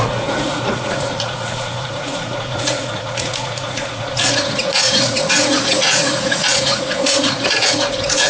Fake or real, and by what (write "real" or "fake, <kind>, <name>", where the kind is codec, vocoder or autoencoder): fake, vocoder, Vocos